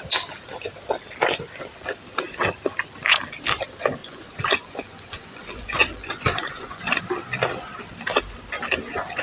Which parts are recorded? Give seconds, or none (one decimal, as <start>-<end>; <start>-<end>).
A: 0.0-4.0; 7.0-9.2